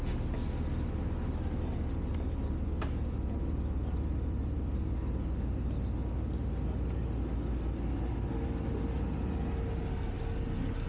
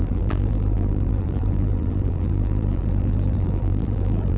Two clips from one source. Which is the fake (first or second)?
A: second